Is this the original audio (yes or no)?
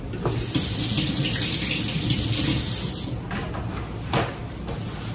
yes